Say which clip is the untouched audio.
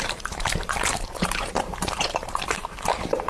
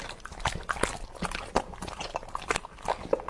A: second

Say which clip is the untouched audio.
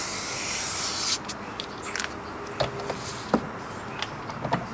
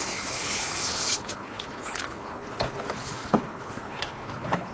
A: first